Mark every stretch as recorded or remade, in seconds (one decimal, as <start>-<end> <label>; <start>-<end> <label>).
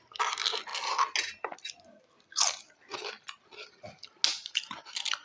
0.0-5.2 recorded